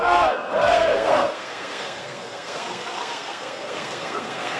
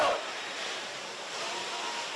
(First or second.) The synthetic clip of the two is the first